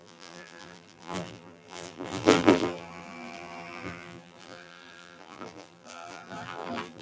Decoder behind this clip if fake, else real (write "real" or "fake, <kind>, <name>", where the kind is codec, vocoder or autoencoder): fake, vocoder, BigVGAN v2